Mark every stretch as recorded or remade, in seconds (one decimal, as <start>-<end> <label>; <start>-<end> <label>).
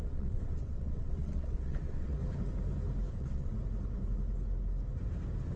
0.0-2.2 remade; 2.2-3.1 recorded; 3.1-3.5 remade; 3.5-5.6 recorded